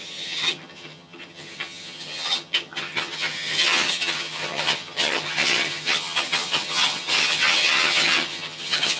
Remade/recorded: remade